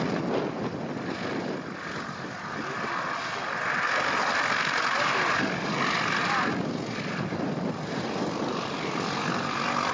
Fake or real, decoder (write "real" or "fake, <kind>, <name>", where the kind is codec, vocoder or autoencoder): real